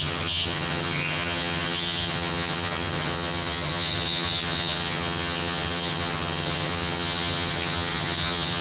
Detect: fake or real fake